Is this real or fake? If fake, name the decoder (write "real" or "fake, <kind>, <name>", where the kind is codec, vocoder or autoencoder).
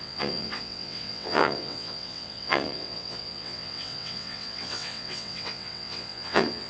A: fake, vocoder, WaveNeXt